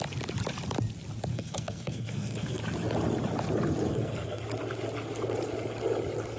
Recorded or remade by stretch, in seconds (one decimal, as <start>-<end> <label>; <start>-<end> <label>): 0.0-1.3 recorded; 1.3-2.6 remade; 2.6-3.9 recorded; 3.9-4.4 remade; 4.4-6.4 recorded